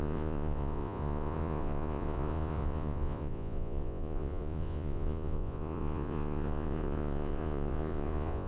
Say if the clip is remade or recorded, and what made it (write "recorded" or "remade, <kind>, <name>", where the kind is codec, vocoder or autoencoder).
remade, vocoder, Vocos